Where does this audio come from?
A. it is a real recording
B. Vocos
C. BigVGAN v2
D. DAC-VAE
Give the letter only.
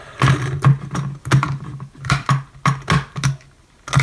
A